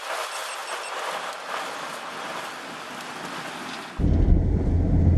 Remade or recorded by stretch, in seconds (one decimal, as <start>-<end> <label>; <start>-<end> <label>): 0.0-5.2 recorded